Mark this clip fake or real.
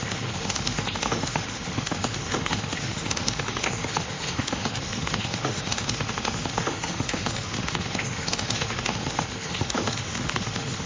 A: fake